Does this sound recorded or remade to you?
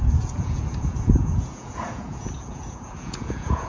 remade